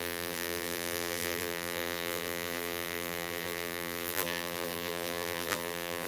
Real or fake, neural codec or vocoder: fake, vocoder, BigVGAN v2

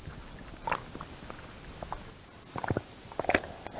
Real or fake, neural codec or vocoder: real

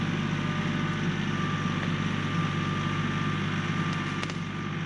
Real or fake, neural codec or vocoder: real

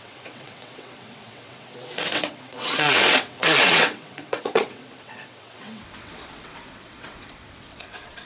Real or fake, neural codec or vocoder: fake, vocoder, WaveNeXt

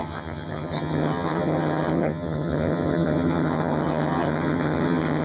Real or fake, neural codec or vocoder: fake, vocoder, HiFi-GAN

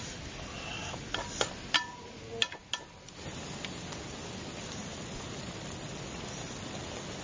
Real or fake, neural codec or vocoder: real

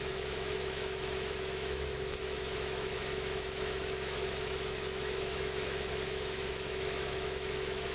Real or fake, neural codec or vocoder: fake, autoencoder, DAC-VAE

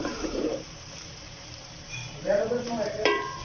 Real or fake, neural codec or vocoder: fake, vocoder, BigVGAN v2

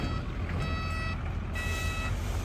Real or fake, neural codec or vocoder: real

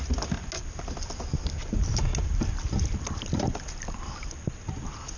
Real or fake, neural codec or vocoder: real